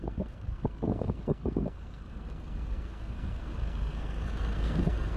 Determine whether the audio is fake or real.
fake